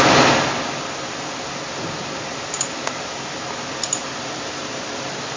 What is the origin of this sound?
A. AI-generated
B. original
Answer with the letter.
B